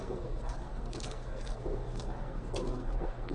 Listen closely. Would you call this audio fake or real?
fake